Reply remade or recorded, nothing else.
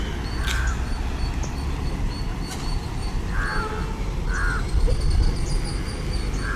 recorded